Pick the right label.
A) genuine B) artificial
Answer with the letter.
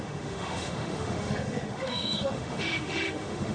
B